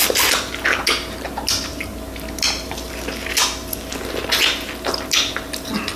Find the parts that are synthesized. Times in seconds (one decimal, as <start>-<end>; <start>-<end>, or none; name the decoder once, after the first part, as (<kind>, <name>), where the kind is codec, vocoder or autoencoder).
none